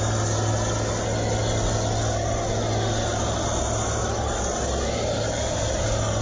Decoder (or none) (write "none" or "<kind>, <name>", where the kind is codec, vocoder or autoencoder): none